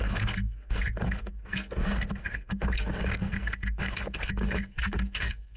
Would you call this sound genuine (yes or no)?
no